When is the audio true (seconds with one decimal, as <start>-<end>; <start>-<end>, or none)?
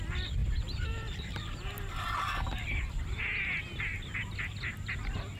0.0-0.4; 2.0-5.4